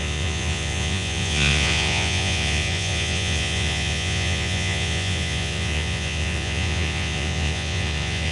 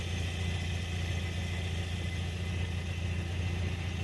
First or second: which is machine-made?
first